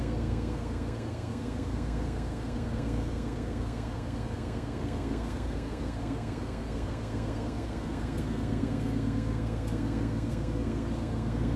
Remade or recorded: remade